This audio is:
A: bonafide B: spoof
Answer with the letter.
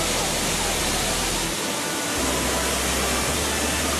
A